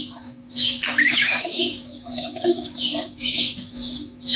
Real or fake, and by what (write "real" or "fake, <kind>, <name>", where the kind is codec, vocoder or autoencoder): fake, autoencoder, DAC-VAE